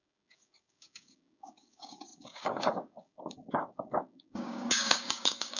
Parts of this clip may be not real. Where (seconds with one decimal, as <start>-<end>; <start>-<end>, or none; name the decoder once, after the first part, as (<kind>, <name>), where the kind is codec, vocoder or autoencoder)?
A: 0.0-5.6 (codec, DAC)